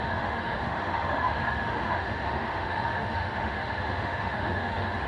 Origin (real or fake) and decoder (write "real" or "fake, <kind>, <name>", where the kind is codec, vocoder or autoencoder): fake, autoencoder, DAC-VAE